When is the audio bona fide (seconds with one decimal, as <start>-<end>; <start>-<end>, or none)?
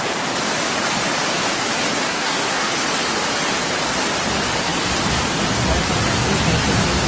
0.0-2.0; 2.7-7.1